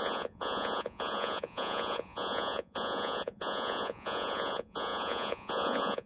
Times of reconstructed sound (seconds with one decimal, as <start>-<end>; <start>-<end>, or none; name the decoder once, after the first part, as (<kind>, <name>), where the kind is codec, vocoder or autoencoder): 0.0-6.1 (vocoder, Vocos)